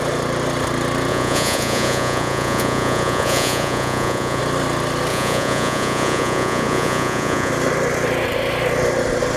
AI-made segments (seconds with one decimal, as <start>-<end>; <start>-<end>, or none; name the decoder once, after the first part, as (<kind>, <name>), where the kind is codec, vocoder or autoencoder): 1.1-4.4 (vocoder, Vocos); 5.1-7.5